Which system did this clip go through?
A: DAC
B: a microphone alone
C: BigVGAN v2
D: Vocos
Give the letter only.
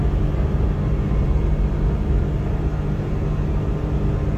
B